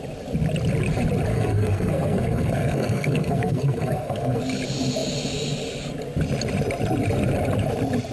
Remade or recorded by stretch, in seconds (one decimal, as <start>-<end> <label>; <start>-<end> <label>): 0.0-1.3 recorded; 1.3-4.4 remade; 4.4-8.1 recorded